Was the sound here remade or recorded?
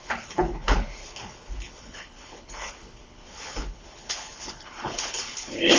remade